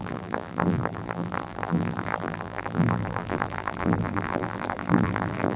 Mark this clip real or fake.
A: fake